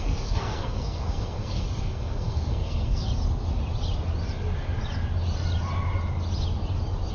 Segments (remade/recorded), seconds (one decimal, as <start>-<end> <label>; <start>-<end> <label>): 0.0-3.1 remade; 3.1-7.1 recorded